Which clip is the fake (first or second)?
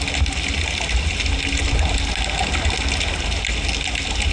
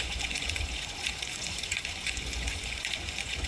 second